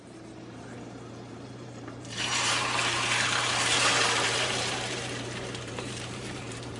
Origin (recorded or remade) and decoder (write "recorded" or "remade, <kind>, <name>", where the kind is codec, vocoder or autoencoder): remade, vocoder, BigVGAN v2